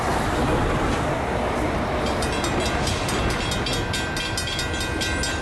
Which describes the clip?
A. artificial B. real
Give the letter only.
B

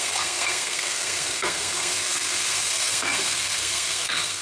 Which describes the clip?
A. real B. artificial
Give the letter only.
B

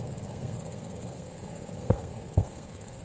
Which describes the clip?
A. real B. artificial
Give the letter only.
B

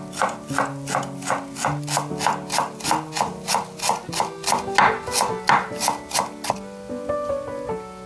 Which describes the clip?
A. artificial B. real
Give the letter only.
B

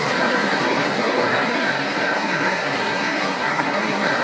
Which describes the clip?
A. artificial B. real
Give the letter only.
A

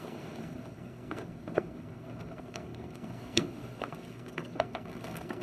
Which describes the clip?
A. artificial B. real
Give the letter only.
A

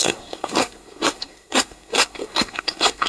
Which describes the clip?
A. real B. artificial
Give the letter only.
B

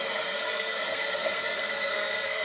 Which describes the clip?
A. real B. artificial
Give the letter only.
B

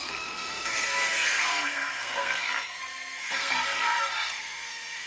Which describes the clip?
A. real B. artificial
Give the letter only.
B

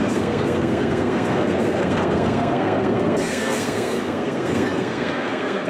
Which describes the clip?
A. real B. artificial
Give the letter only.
B